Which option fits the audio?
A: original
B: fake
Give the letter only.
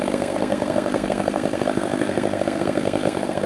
B